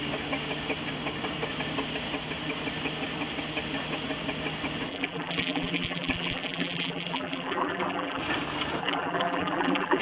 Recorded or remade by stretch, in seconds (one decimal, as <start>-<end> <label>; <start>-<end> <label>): 0.0-4.9 recorded; 4.9-8.2 remade; 8.2-8.8 recorded; 8.8-10.0 remade

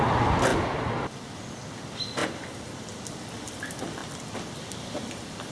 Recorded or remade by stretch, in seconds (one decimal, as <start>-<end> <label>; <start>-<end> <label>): 0.0-0.5 recorded; 0.5-1.1 remade; 1.1-2.2 recorded; 2.2-3.2 remade; 3.2-4.0 recorded; 4.0-5.5 remade

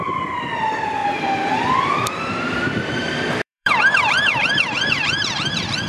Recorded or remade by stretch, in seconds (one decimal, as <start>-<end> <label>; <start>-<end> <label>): 0.0-5.9 remade

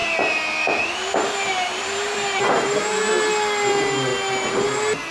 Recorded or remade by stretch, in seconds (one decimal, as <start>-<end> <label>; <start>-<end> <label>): 0.0-3.1 remade; 3.1-5.1 recorded

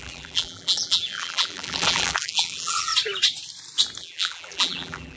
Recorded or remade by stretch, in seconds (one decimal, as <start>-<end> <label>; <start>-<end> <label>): 0.0-2.9 remade; 2.9-4.0 recorded; 4.0-5.2 remade

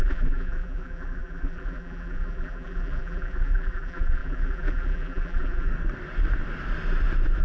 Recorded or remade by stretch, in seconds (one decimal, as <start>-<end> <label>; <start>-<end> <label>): 0.0-5.7 remade; 5.7-7.4 recorded

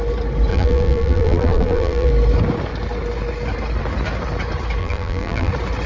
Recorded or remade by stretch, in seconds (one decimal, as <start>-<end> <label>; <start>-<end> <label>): 0.0-0.5 recorded; 0.5-2.1 remade; 2.1-4.8 recorded; 4.8-5.5 remade; 5.5-5.9 recorded